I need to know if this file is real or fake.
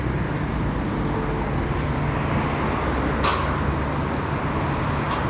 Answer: real